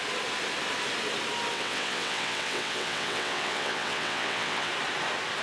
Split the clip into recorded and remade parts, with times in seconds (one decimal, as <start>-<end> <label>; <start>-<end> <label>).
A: 0.0-1.5 recorded; 1.5-4.7 remade; 4.7-5.4 recorded